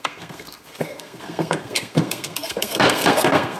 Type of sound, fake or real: fake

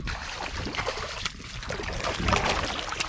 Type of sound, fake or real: fake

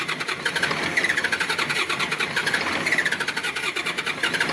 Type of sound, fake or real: fake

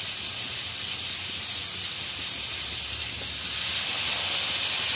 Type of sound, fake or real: real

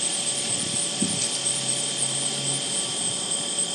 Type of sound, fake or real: real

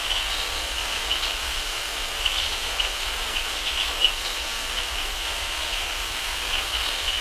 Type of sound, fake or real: fake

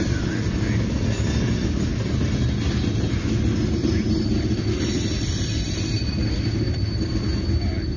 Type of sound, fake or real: real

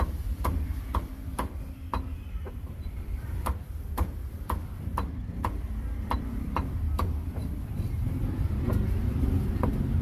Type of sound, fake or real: fake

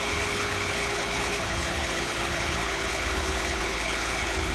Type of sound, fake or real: fake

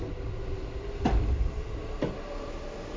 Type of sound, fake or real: real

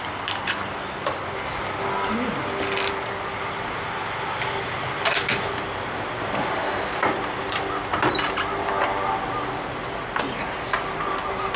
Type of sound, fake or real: fake